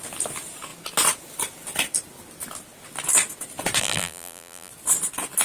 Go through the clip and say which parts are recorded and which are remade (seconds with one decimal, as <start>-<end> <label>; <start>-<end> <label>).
0.0-3.8 recorded; 3.8-4.7 remade; 4.7-5.4 recorded